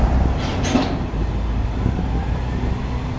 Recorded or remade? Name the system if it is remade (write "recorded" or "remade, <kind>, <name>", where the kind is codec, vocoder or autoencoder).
recorded